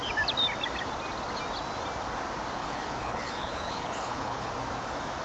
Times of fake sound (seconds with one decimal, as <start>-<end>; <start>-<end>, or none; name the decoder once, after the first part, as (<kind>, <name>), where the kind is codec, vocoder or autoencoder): 2.6-4.5 (codec, HILCodec)